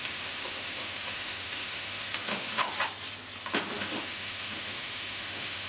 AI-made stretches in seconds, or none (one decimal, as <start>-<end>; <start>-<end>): 0.0-2.7; 3.7-5.7

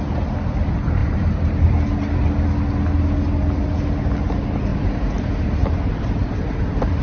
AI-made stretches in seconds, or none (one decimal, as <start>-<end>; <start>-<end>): 1.0-1.7; 4.7-6.6

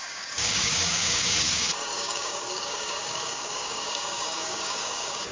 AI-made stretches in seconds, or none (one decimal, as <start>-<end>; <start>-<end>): 0.0-5.3

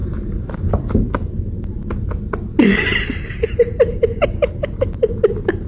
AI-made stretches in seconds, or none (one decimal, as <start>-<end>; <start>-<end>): 0.0-1.8; 4.0-5.7

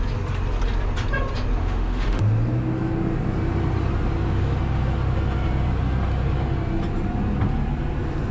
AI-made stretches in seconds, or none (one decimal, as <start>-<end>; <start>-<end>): 1.6-2.2

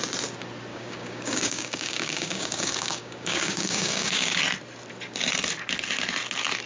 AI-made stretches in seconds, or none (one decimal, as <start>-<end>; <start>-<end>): 0.7-4.4